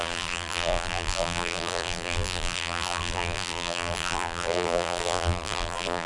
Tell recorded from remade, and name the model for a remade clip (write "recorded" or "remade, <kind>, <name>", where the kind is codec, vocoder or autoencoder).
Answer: remade, vocoder, BigVGAN v2